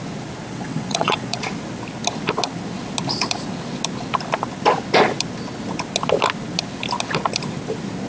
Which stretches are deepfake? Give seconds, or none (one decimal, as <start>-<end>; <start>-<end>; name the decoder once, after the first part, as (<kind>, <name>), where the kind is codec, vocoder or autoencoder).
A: 0.5-1.4 (vocoder, WaveNeXt)